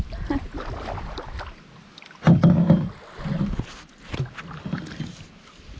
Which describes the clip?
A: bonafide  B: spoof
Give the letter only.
A